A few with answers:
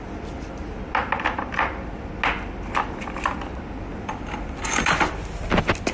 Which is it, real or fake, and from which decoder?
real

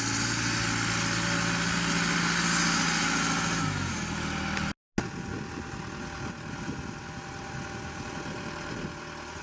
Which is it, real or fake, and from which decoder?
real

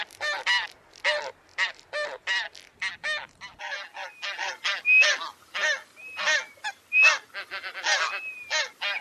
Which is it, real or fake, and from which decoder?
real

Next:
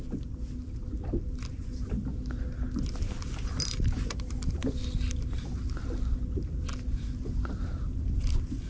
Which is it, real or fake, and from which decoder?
real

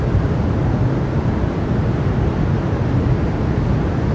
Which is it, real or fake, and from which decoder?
real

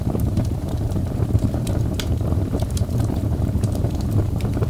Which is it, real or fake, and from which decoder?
fake, vocoder, BigVGAN v2